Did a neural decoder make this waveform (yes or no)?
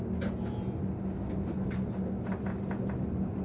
no